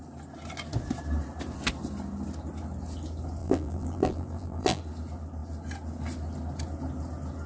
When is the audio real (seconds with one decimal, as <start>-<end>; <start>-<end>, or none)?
0.0-3.4; 4.8-7.5